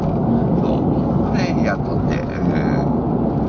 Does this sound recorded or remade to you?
recorded